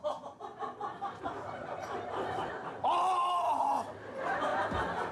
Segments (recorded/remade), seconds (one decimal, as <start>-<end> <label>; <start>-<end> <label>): 0.0-5.1 recorded